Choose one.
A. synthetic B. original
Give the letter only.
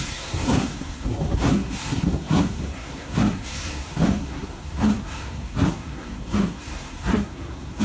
A